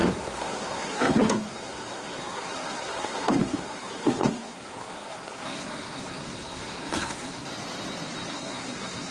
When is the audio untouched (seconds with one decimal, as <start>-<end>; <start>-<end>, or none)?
7.5-8.3